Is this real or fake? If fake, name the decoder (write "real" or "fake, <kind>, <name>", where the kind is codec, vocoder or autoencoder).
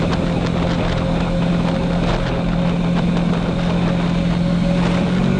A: real